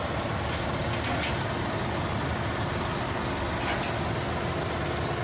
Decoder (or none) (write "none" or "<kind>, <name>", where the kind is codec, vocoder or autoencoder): none